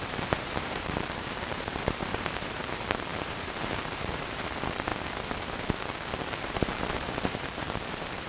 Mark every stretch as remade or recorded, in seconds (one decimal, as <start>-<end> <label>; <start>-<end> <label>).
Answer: 0.0-4.9 remade; 4.9-6.4 recorded; 6.4-8.3 remade